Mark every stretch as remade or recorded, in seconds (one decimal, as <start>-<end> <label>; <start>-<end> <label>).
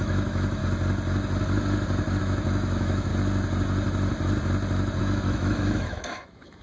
0.0-0.6 remade; 0.6-2.2 recorded; 2.2-3.1 remade; 3.1-5.0 recorded; 5.0-6.6 remade